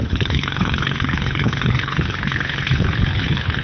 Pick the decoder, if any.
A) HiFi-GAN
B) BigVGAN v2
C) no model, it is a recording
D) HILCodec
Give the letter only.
D